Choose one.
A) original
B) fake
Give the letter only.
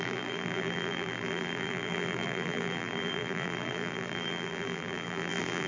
B